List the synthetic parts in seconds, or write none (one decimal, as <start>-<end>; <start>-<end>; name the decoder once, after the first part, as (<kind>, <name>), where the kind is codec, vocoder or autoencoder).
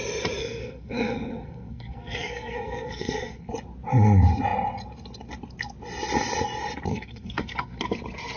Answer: 0.4-3.5 (codec, SNAC); 6.9-7.8